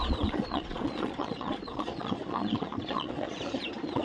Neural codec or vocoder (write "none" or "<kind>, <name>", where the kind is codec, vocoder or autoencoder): vocoder, Vocos